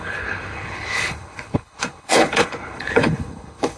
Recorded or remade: remade